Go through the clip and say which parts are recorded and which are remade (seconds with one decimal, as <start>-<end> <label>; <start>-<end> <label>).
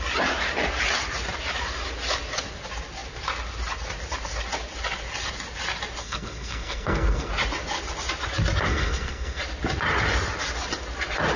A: 0.0-6.0 recorded; 6.0-7.3 remade; 7.3-8.7 recorded; 8.7-9.4 remade; 9.4-11.4 recorded